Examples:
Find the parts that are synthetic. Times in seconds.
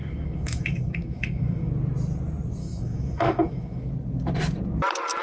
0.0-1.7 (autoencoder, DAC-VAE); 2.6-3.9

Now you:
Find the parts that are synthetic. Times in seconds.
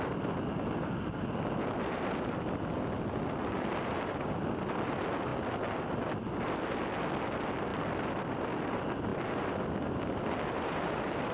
none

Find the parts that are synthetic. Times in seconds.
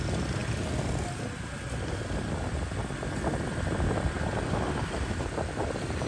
none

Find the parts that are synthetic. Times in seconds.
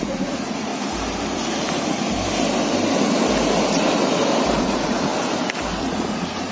0.0-0.7 (vocoder, Vocos); 4.6-5.1; 5.8-6.5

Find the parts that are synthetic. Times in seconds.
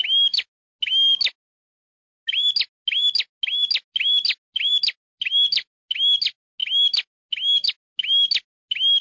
none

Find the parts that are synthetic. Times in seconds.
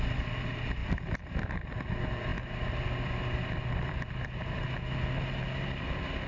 none